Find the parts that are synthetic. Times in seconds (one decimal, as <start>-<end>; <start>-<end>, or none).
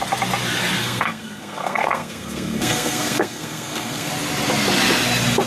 0.8-4.1